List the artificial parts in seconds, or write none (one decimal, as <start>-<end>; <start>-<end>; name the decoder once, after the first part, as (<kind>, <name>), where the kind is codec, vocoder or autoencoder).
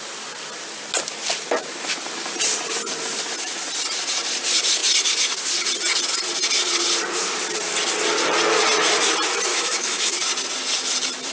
9.5-10.1 (autoencoder, DAC-VAE)